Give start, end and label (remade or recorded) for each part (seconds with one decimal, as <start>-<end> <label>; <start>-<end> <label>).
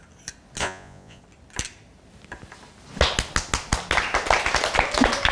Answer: 0.0-0.6 recorded; 0.6-1.2 remade; 1.2-5.3 recorded